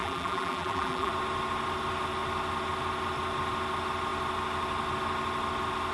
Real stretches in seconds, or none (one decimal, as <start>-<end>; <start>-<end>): 1.1-5.9